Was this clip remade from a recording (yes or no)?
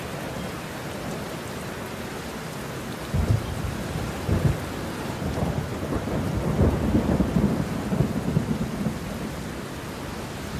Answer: no